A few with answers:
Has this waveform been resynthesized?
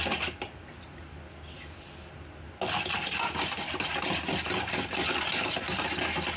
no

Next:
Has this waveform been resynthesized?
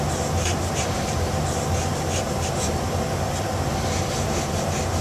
yes